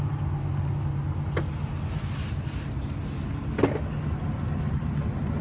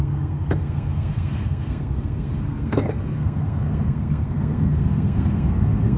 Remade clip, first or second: second